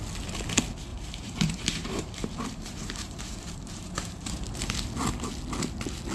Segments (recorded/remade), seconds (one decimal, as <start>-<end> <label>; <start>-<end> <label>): 0.0-0.9 recorded; 0.9-4.6 remade; 4.6-6.1 recorded